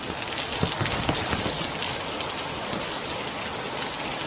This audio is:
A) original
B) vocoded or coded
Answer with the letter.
A